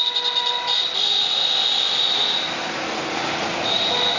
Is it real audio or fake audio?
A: real